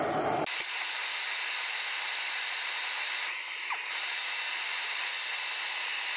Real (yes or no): yes